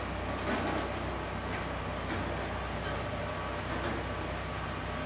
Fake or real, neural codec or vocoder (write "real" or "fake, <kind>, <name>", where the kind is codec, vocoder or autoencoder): real